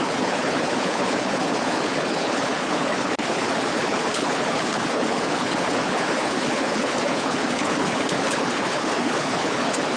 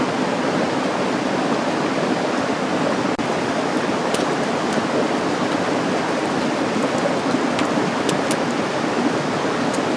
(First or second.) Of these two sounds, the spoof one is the first